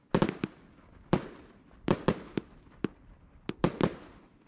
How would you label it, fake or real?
real